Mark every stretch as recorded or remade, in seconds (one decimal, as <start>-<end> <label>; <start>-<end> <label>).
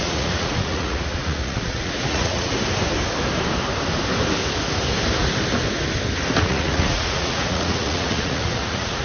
0.0-2.5 remade; 2.5-6.4 recorded; 6.4-9.0 remade